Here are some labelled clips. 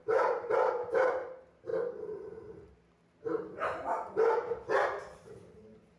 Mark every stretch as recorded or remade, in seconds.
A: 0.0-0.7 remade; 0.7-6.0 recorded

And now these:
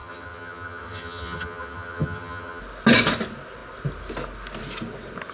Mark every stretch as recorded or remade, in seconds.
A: 0.0-2.6 remade; 2.6-5.3 recorded

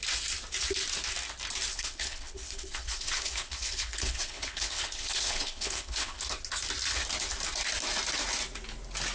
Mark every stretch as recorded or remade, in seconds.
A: 0.0-1.7 recorded; 1.7-6.2 remade; 6.2-9.1 recorded

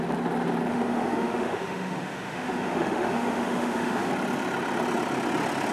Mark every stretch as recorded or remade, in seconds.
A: 0.0-0.7 recorded; 0.7-4.1 remade; 4.1-5.7 recorded